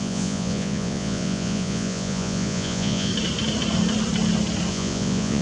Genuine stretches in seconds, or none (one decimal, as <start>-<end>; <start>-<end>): 3.1-4.7